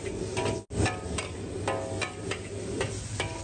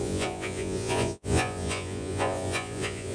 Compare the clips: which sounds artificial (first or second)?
second